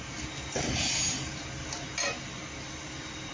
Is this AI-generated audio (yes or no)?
no